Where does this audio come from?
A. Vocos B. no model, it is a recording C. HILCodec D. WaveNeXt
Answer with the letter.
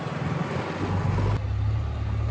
B